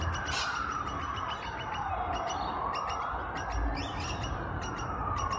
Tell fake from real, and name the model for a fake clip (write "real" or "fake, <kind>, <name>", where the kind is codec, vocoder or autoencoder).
real